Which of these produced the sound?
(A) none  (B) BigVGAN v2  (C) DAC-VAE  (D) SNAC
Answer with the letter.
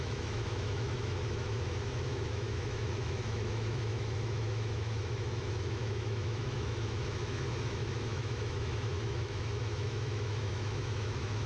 C